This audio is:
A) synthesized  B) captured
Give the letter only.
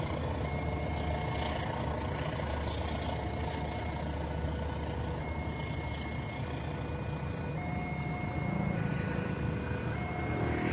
B